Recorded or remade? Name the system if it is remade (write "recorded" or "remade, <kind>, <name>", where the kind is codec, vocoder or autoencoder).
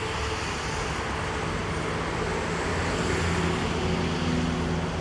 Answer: recorded